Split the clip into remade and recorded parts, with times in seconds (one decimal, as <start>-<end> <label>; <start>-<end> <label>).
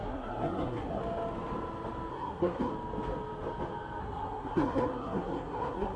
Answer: 0.0-1.0 remade; 1.0-2.1 recorded; 2.1-2.7 remade; 2.7-4.0 recorded; 4.0-6.0 remade